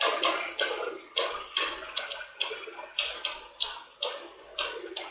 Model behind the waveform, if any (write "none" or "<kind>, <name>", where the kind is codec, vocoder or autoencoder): none